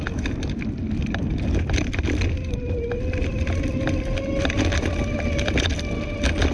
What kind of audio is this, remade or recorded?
recorded